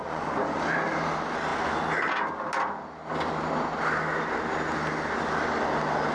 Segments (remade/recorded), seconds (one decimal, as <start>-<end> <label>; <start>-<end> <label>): 0.0-0.6 remade; 0.6-6.1 recorded